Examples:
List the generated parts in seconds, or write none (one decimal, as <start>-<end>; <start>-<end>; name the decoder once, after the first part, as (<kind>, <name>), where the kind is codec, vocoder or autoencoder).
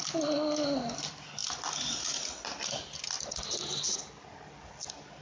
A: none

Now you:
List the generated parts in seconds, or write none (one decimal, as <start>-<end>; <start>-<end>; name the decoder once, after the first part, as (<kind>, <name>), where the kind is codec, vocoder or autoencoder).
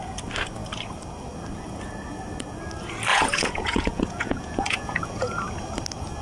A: 3.1-5.4 (vocoder, Vocos)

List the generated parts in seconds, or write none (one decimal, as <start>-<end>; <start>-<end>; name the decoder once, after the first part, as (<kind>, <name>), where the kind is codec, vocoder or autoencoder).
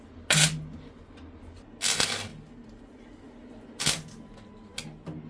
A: none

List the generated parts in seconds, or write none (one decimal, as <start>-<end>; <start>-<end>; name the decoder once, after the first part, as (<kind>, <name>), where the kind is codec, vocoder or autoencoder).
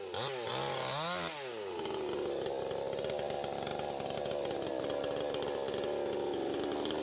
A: none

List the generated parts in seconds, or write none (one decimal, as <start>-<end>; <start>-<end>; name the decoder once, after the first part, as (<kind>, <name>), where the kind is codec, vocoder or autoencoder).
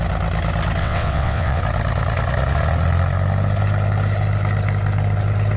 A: 0.8-1.6 (vocoder, WaveNeXt)